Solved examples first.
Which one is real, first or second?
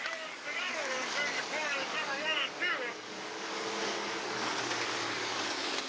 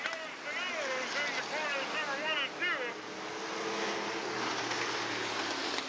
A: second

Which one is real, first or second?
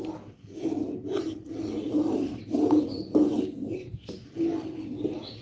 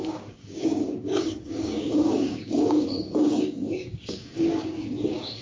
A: first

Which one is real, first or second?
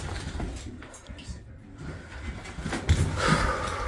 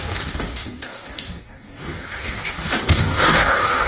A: first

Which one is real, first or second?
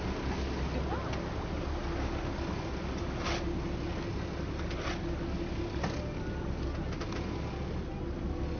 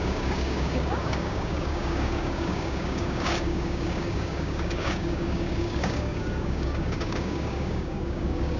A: first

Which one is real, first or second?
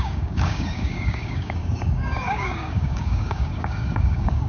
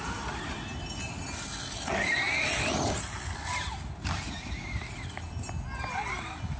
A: second